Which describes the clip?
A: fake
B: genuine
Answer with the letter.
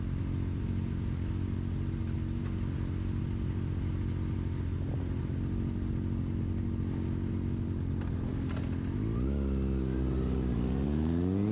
B